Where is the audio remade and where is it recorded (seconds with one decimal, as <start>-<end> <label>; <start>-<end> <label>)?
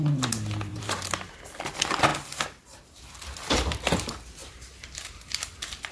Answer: 0.0-0.7 recorded; 0.7-1.3 remade; 1.3-4.4 recorded; 4.4-5.9 remade